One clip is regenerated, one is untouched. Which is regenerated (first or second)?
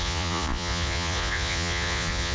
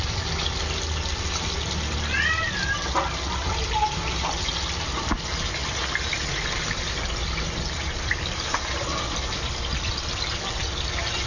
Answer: first